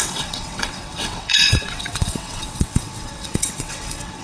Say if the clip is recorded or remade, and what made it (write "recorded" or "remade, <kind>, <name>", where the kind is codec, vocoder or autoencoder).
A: remade, vocoder, WaveNeXt